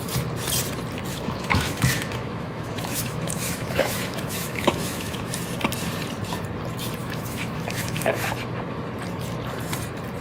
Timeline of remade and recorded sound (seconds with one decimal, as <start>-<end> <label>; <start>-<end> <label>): 0.0-1.1 recorded; 1.1-5.3 remade; 5.3-7.0 recorded; 7.0-8.3 remade; 8.3-10.2 recorded